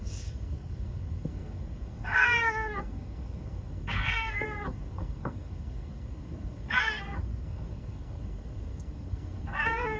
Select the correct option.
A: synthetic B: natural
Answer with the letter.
A